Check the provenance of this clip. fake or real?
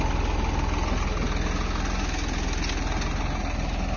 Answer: real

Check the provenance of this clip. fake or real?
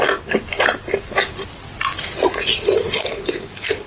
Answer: real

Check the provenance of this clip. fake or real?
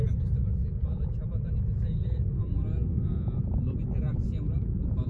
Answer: fake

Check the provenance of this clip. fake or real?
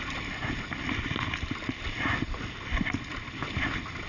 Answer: real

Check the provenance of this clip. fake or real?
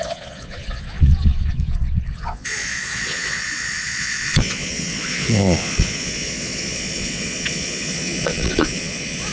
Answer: fake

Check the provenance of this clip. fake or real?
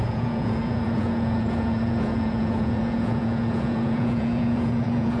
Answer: fake